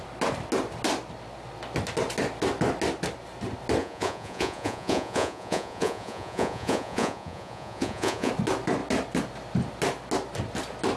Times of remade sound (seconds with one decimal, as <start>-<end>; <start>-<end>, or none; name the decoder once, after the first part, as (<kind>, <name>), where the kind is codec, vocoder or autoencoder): 3.8-8.3 (vocoder, Vocos)